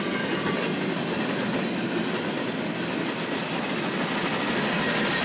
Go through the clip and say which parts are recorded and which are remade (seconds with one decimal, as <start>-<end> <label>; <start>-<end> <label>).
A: 0.0-5.2 recorded